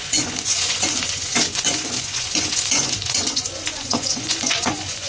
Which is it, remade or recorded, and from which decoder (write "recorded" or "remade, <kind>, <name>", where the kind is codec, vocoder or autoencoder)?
remade, vocoder, Vocos